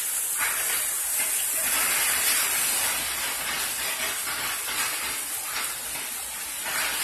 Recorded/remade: recorded